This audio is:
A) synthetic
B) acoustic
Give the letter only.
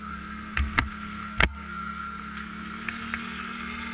A